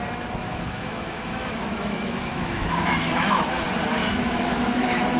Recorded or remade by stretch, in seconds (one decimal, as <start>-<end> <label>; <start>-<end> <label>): 0.0-0.4 recorded; 0.4-3.5 remade; 3.5-4.0 recorded; 4.0-5.2 remade